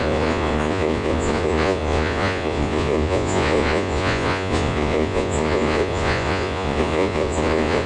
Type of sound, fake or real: fake